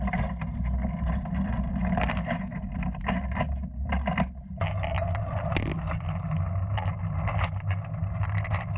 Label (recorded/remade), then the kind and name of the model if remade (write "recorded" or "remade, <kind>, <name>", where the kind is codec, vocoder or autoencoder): recorded